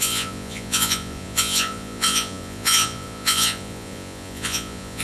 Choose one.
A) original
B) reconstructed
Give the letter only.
B